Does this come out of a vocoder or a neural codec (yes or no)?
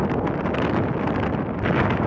no